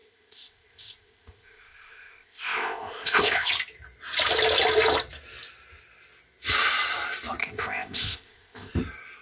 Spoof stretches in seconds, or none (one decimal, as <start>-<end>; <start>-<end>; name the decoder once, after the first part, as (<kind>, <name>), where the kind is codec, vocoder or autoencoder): 0.0-3.5 (codec, ZipCodec); 7.4-8.7